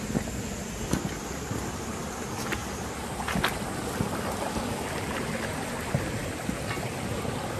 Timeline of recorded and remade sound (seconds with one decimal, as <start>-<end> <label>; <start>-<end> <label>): 0.0-2.6 recorded; 2.6-3.2 remade; 3.2-7.6 recorded